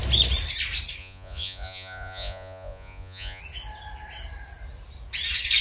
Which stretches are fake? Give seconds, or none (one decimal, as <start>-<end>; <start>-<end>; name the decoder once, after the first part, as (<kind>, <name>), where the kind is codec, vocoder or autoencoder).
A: 1.0-3.4 (vocoder, Vocos)